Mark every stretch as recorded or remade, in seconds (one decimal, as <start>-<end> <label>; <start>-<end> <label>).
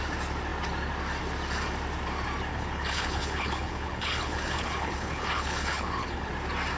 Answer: 0.0-2.5 recorded; 2.5-6.3 remade; 6.3-6.8 recorded